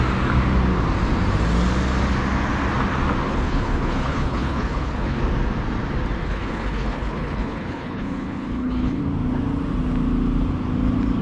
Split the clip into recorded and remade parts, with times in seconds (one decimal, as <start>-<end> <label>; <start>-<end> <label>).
0.0-3.3 recorded; 3.3-5.2 remade; 5.2-6.2 recorded; 6.2-9.0 remade; 9.0-11.2 recorded